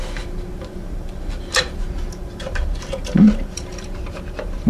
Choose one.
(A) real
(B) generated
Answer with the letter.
B